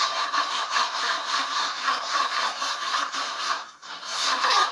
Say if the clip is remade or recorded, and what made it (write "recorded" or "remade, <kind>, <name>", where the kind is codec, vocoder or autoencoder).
remade, codec, SNAC